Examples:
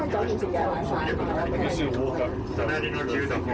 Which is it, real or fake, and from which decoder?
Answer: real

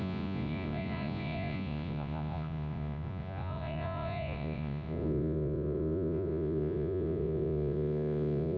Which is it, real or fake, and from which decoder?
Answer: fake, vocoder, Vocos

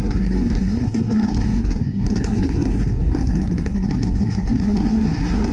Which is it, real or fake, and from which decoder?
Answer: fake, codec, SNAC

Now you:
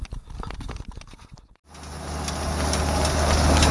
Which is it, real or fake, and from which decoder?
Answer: real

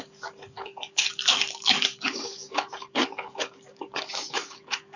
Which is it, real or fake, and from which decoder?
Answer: fake, codec, DAC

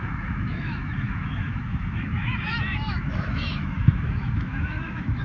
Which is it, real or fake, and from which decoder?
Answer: fake, autoencoder, DAC-VAE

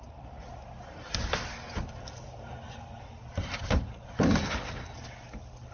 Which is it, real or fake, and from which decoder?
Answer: real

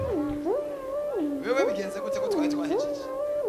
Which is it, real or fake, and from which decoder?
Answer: real